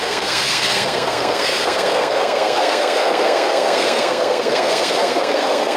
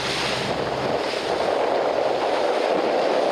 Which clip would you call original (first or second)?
second